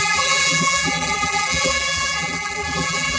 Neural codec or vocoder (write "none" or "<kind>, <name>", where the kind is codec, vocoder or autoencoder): vocoder, BigVGAN v2